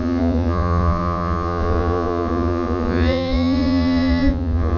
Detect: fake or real fake